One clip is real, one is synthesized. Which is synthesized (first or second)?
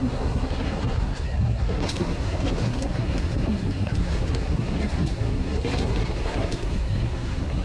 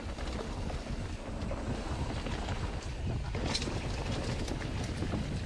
first